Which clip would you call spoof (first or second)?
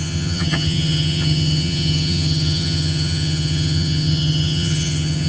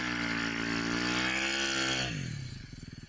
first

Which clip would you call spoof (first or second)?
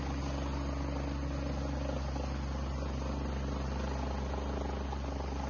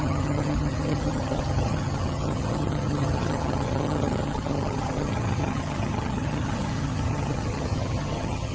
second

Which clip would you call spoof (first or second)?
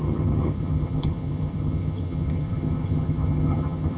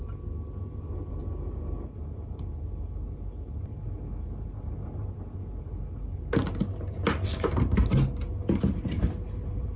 first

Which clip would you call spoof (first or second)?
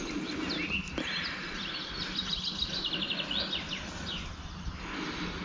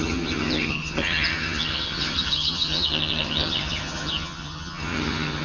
second